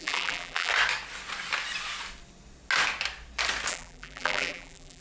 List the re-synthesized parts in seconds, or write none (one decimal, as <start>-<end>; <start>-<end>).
0.0-0.7; 3.7-5.0